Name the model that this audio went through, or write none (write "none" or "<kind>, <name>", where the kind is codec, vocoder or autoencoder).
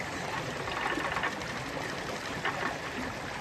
none